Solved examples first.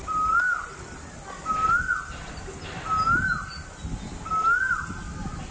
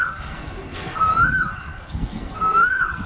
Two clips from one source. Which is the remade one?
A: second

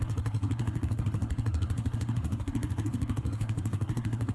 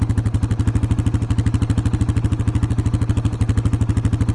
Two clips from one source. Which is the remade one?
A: first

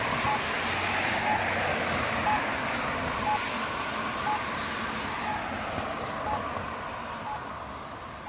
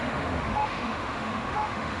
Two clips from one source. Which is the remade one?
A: second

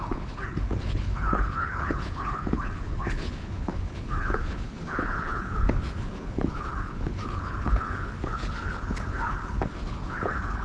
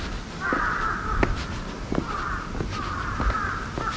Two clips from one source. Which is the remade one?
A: first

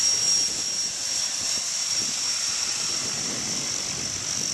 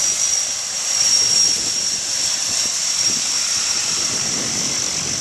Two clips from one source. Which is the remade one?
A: second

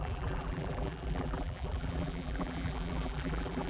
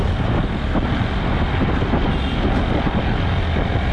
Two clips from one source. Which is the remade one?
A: first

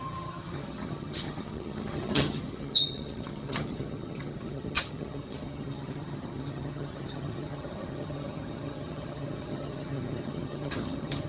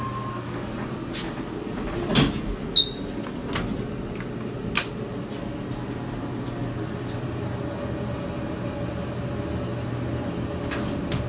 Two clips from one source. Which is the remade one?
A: first